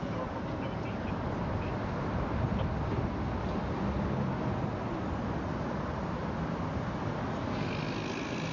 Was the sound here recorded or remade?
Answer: recorded